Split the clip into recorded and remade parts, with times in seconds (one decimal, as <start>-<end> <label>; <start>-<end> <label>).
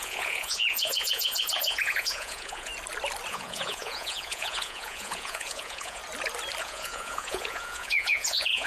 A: 0.0-2.7 remade; 2.7-3.3 recorded; 3.3-6.0 remade; 6.0-6.6 recorded; 6.6-8.7 remade